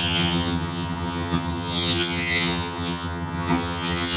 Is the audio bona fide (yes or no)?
no